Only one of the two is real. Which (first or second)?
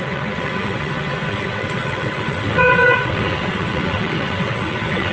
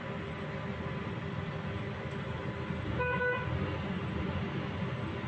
second